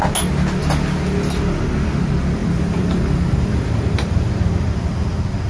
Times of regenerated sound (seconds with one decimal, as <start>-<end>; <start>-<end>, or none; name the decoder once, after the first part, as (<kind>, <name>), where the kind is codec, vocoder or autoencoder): 2.4-4.3 (vocoder, BigVGAN v2)